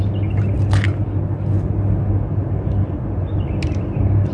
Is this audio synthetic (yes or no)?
no